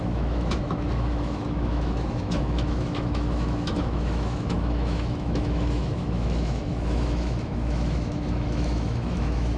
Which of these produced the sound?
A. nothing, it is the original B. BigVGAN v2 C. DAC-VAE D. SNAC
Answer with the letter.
C